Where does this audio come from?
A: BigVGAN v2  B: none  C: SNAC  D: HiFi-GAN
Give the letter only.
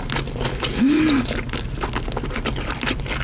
B